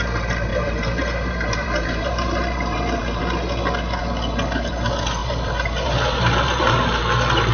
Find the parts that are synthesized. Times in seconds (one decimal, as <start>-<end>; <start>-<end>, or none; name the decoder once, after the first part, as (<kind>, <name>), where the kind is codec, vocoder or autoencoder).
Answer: 0.5-3.2 (vocoder, BigVGAN v2); 5.2-7.0